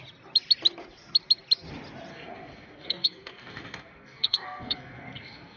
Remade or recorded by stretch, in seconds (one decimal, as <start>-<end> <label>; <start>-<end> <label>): 0.0-2.1 recorded; 2.1-5.6 remade